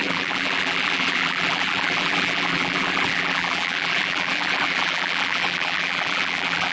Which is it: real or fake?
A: fake